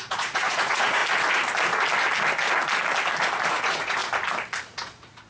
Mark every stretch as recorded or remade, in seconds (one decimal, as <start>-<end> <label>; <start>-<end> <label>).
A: 0.0-1.0 remade; 1.0-3.5 recorded; 3.5-4.0 remade; 4.0-4.7 recorded; 4.7-5.3 remade